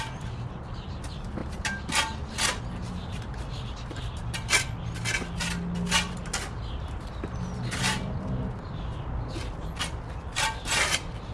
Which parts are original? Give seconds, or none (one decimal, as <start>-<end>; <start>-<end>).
0.0-11.3

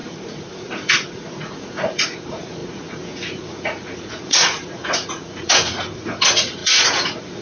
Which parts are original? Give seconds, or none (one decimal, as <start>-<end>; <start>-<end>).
none

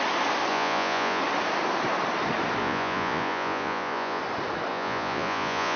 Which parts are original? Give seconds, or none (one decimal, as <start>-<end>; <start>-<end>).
0.0-0.5; 1.2-2.6; 4.2-4.7